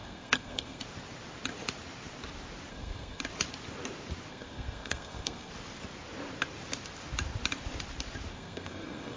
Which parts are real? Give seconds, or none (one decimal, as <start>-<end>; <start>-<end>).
0.8-2.7; 3.2-4.3; 5.5-8.3